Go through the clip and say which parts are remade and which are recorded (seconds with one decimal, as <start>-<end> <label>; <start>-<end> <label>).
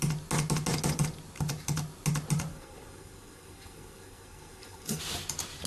0.0-2.5 recorded; 2.5-5.0 remade; 5.0-5.7 recorded